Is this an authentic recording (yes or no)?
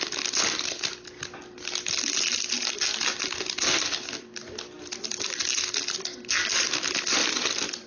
yes